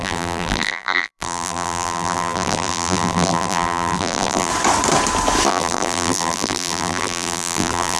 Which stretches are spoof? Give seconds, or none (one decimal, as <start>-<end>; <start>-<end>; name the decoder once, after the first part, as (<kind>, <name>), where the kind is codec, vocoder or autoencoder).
0.0-4.5 (vocoder, BigVGAN v2); 5.5-8.0

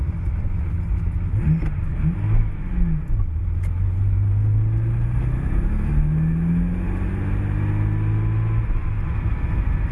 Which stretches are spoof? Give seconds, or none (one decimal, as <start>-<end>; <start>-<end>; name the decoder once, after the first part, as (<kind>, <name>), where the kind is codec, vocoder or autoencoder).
none